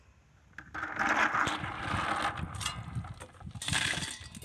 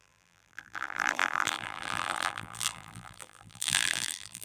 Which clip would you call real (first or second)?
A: first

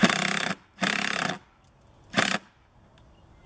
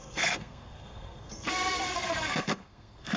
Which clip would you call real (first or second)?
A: first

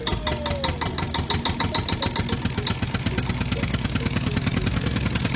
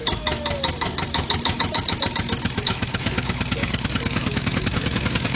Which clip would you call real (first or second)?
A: first